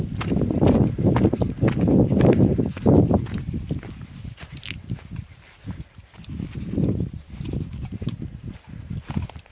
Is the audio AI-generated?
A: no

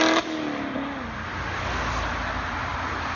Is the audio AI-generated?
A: no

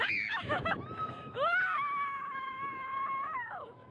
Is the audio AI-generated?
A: yes